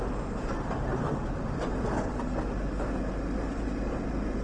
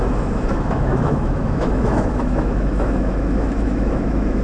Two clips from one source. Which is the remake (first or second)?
second